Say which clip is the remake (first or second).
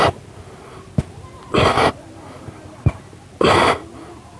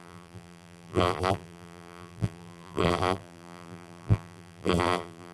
second